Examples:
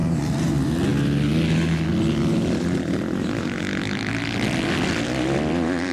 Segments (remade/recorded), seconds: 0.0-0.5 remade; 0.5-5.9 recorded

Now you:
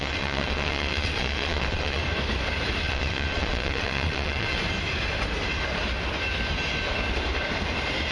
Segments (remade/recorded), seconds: 0.0-2.0 remade; 2.0-2.8 recorded; 2.8-4.6 remade; 4.6-8.1 recorded

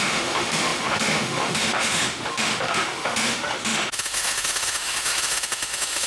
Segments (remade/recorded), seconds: 0.0-6.1 remade

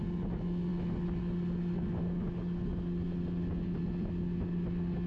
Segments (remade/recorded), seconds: 0.0-5.1 recorded

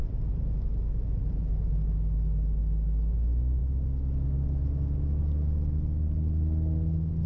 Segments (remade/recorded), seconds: 0.0-7.3 recorded

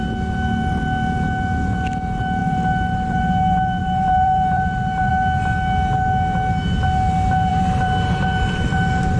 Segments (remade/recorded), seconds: 0.0-2.4 recorded; 2.4-3.2 remade; 3.2-3.8 recorded; 3.8-5.1 remade; 5.1-7.5 recorded; 7.5-9.2 remade

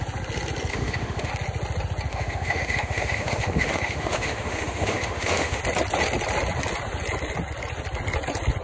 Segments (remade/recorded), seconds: 0.0-0.7 recorded; 0.7-1.3 remade; 1.3-2.1 recorded; 2.1-5.6 remade; 5.6-8.6 recorded